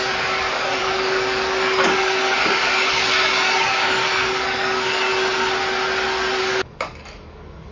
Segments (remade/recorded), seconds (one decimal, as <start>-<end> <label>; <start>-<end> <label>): 0.0-5.1 remade; 5.1-6.4 recorded; 6.4-7.7 remade